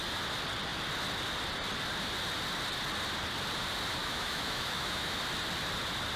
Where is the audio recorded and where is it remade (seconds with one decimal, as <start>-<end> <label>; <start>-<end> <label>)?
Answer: 0.0-4.0 recorded; 4.0-5.2 remade; 5.2-6.2 recorded